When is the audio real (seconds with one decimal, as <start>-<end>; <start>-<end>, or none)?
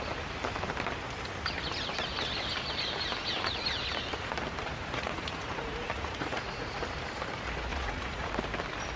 0.0-4.6; 6.8-7.7; 8.4-9.0